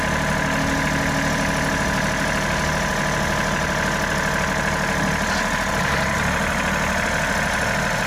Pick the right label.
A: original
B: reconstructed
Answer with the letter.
A